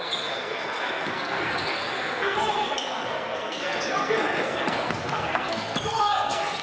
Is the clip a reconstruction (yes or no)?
yes